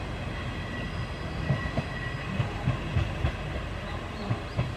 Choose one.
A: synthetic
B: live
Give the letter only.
B